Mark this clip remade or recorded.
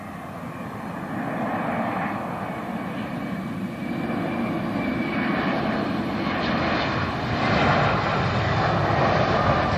recorded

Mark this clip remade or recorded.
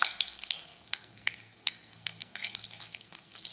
remade